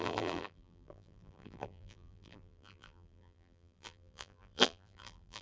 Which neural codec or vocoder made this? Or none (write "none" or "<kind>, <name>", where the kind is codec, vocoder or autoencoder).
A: vocoder, BigVGAN v2